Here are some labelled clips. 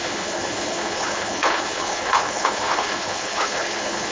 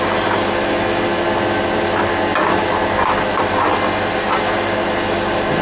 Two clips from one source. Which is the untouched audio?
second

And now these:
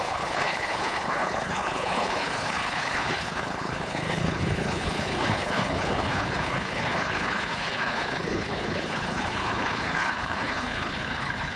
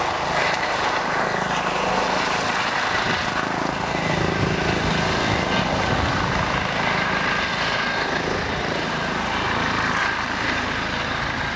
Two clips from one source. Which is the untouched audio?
second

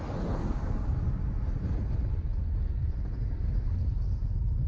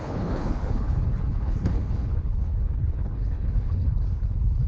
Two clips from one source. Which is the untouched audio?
first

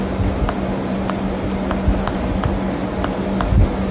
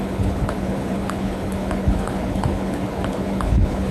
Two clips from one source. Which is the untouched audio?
first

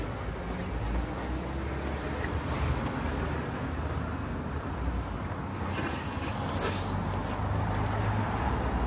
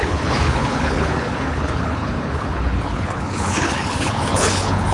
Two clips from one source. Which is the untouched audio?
first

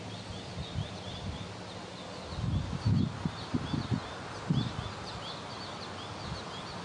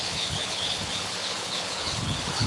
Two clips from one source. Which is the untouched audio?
first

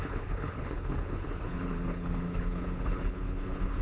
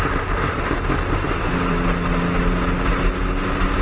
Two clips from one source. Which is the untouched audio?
second